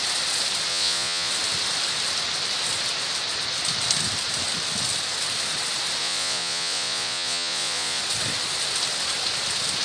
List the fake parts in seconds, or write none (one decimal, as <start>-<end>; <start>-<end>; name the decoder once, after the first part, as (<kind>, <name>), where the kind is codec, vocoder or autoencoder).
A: 0.7-1.3 (vocoder, Vocos); 6.0-8.0